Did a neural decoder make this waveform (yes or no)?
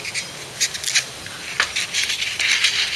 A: no